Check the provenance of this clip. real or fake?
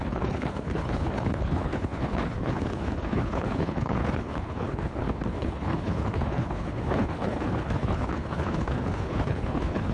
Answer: fake